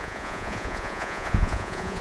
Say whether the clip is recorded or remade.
remade